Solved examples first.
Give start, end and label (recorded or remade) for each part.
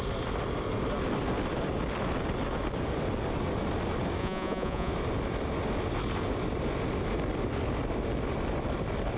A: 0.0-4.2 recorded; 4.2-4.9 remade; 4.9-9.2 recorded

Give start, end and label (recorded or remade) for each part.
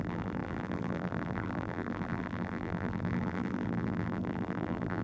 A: 0.0-5.0 remade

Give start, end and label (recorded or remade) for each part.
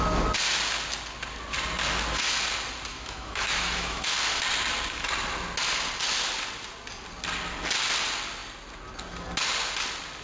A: 0.0-2.9 recorded; 2.9-4.1 remade; 4.1-10.2 recorded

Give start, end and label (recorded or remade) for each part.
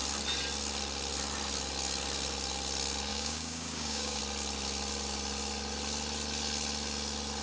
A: 0.0-3.1 recorded; 3.1-4.2 remade; 4.2-7.4 recorded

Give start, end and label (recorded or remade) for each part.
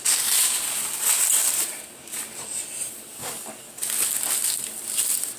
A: 0.0-3.2 recorded; 3.2-3.8 remade; 3.8-5.4 recorded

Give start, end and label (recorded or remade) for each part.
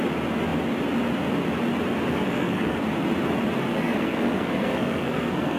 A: 0.0-2.1 recorded; 2.1-2.8 remade; 2.8-3.7 recorded; 3.7-5.6 remade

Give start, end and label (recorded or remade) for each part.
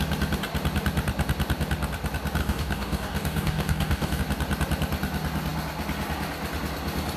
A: 0.0-2.4 recorded; 2.4-4.2 remade; 4.2-7.2 recorded